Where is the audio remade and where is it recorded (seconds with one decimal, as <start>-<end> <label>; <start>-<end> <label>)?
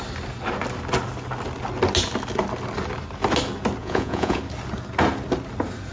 0.0-3.8 recorded; 3.8-4.4 remade; 4.4-5.9 recorded